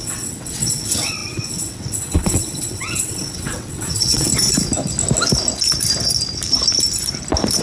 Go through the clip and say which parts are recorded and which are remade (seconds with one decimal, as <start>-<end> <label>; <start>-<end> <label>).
0.0-4.3 remade; 4.3-7.6 recorded